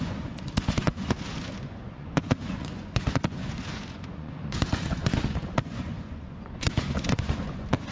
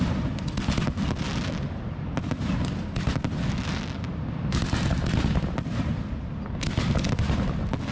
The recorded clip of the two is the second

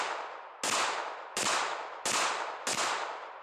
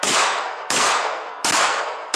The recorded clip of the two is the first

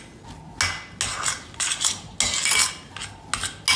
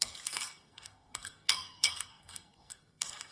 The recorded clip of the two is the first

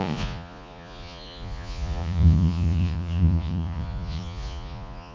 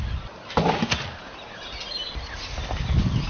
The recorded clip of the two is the second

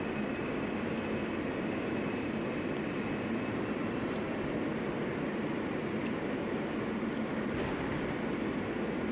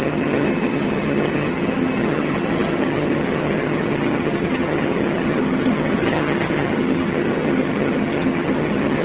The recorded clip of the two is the first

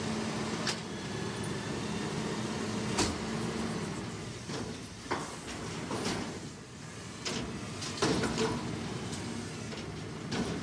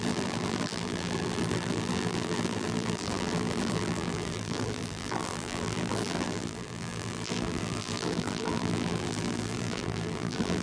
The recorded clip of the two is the first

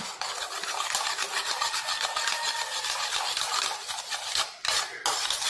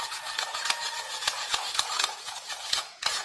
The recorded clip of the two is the first